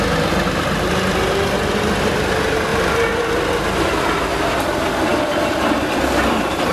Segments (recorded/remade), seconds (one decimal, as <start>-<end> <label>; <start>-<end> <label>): 0.0-2.7 recorded; 2.7-3.9 remade; 3.9-5.1 recorded; 5.1-6.7 remade